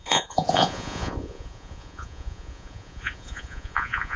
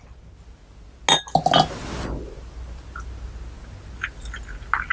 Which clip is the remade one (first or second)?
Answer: first